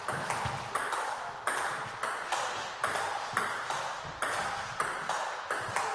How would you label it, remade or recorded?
recorded